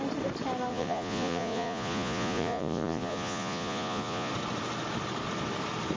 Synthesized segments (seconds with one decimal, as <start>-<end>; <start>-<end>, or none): 0.7-4.3